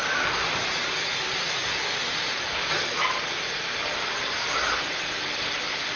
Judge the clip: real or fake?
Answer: real